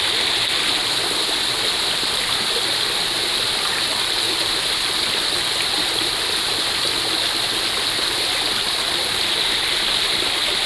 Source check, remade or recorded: recorded